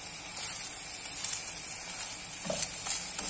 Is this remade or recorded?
recorded